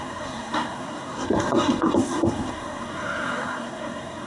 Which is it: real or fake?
fake